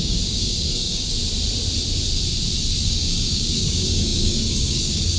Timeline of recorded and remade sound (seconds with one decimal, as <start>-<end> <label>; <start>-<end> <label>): 0.0-1.2 remade; 1.2-2.8 recorded; 2.8-5.2 remade